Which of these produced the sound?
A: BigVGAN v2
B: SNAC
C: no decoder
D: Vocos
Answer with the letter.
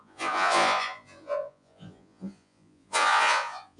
D